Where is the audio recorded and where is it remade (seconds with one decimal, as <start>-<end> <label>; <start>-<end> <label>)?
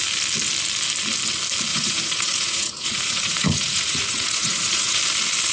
0.0-1.7 recorded; 1.7-5.0 remade; 5.0-5.5 recorded